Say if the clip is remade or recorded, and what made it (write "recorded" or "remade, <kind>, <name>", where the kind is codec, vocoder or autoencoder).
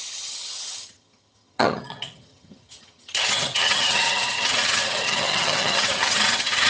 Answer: remade, vocoder, HiFi-GAN